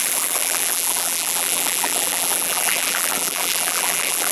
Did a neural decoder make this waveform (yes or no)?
yes